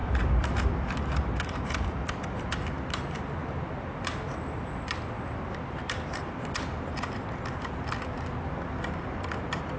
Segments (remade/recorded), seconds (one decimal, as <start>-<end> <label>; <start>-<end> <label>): 0.0-0.6 remade; 0.6-9.8 recorded